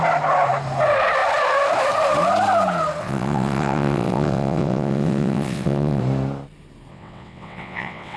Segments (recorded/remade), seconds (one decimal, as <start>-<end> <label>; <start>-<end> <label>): 0.0-3.0 recorded; 3.0-6.0 remade; 6.0-6.9 recorded; 6.9-8.2 remade